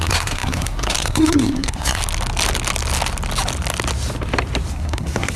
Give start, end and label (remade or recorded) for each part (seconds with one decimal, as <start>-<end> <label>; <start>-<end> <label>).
0.0-2.0 remade; 2.0-4.7 recorded; 4.7-5.4 remade